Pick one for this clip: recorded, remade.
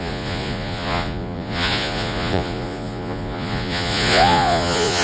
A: remade